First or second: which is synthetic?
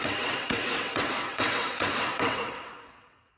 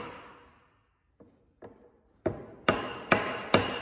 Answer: first